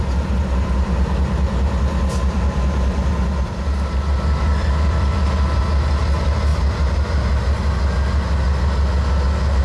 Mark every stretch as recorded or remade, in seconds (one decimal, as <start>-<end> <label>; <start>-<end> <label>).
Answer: 0.0-4.5 recorded; 4.5-5.6 remade; 5.6-9.6 recorded